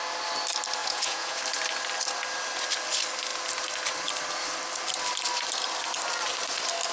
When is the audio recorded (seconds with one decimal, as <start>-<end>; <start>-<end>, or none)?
0.0-0.8; 1.4-6.9